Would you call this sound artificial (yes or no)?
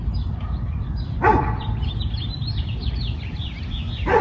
yes